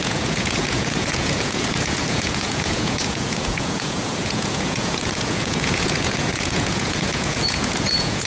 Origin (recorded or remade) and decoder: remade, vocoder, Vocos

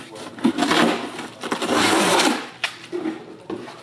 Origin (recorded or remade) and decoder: recorded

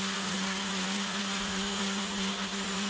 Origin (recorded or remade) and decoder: remade, vocoder, Vocos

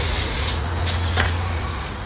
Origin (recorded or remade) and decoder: remade, vocoder, Vocos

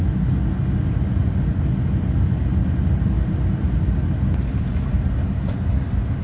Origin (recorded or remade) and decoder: recorded